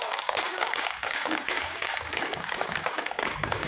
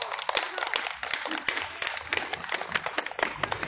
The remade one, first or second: first